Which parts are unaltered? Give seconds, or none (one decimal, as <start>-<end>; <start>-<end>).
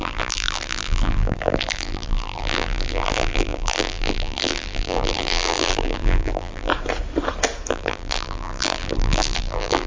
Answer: 6.7-7.7